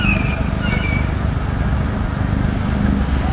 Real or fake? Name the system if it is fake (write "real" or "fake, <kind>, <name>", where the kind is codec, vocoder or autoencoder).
real